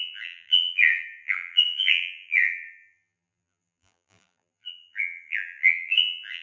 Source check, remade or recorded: remade